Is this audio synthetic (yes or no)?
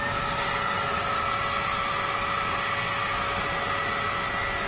no